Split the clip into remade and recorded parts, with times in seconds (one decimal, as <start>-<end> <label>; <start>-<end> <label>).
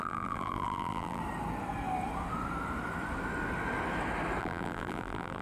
0.0-1.2 remade; 1.2-4.4 recorded; 4.4-5.4 remade